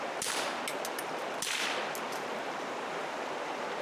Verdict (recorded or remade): recorded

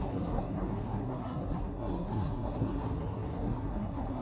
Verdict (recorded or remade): remade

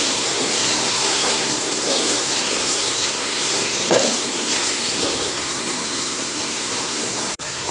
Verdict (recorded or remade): remade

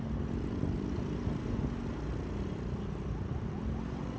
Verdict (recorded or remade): recorded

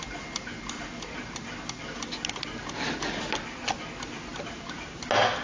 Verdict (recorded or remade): recorded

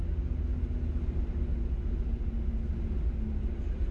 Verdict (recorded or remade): recorded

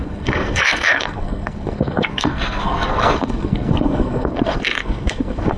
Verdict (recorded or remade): remade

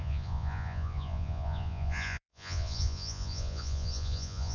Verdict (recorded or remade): remade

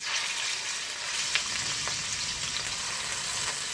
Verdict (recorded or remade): recorded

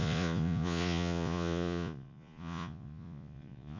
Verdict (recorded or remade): remade